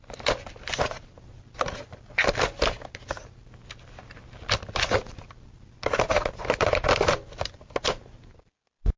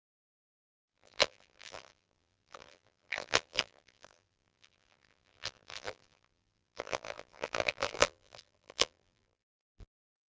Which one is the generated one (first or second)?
second